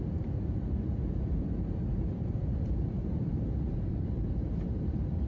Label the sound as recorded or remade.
remade